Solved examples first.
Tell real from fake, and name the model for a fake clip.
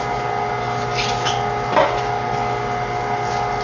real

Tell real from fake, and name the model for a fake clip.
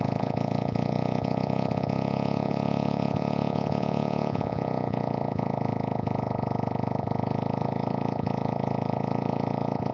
fake, vocoder, Vocos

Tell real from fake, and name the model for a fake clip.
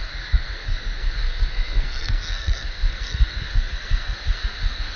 fake, codec, SNAC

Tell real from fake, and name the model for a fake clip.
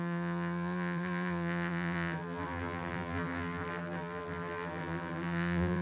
fake, vocoder, BigVGAN v2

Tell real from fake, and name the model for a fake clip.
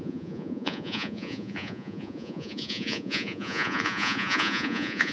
fake, vocoder, Vocos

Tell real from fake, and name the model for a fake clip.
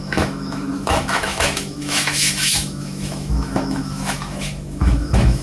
fake, autoencoder, DAC-VAE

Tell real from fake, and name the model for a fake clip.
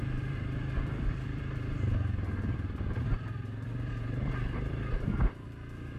fake, vocoder, BigVGAN v2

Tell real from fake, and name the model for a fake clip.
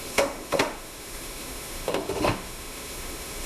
fake, autoencoder, DAC-VAE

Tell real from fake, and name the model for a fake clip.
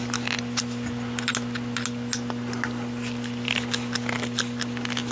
real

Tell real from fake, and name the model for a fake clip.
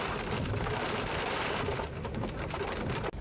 real